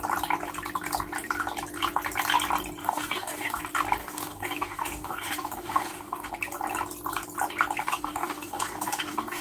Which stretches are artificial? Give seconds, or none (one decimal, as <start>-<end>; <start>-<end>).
2.8-3.6; 4.0-6.3; 7.8-9.4